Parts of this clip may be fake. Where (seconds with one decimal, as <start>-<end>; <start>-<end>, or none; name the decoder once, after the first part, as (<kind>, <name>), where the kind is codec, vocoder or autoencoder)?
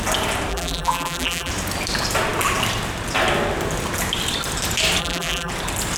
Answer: 0.5-1.5 (vocoder, BigVGAN v2); 5.0-5.5